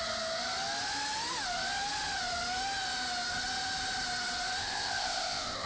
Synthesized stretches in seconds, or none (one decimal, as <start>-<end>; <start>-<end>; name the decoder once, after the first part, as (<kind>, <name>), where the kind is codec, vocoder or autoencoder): 4.6-5.7 (codec, ZipCodec)